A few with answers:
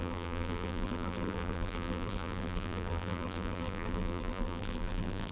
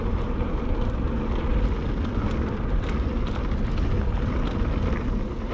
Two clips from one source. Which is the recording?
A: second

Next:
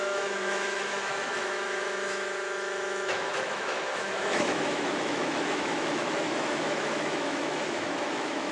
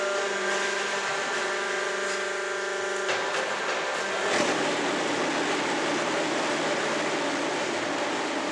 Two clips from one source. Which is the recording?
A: second